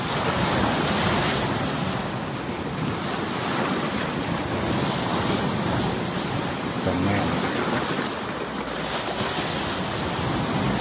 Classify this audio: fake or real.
real